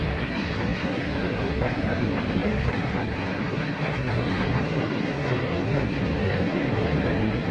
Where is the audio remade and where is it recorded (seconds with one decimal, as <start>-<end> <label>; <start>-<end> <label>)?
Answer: 0.0-7.5 remade